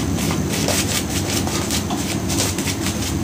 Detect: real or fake real